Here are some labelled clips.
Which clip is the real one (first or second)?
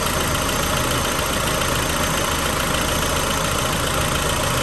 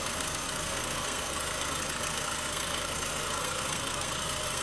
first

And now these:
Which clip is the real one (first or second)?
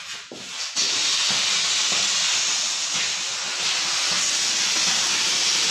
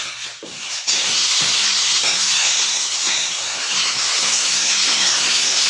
first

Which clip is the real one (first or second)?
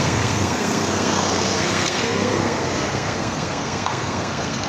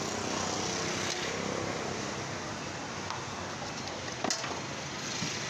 second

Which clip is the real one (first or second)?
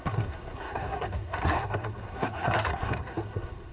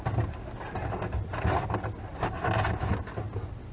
second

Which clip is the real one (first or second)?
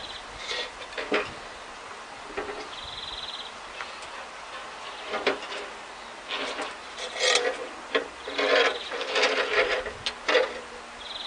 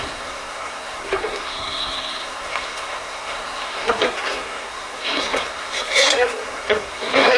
first